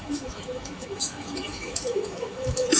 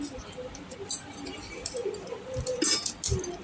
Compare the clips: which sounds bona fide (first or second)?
second